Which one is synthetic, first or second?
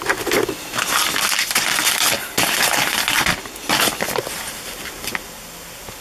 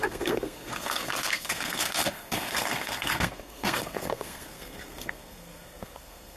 second